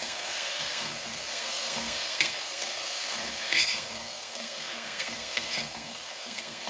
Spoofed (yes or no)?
yes